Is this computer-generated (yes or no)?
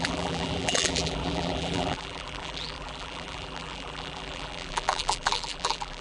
yes